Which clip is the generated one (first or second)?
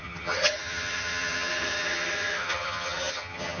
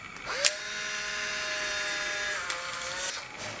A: first